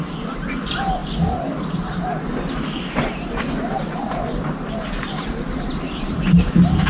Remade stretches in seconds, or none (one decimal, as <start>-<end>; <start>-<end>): none